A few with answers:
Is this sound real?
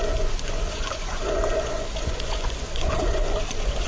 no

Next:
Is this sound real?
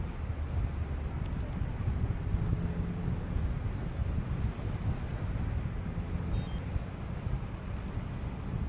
yes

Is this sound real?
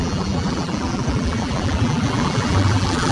no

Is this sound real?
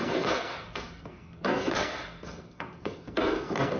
no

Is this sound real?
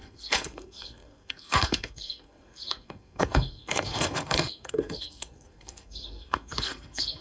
no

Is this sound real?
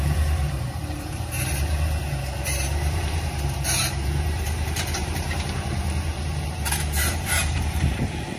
no